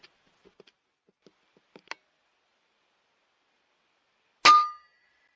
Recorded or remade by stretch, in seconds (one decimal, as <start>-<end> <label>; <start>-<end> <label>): 0.0-5.4 recorded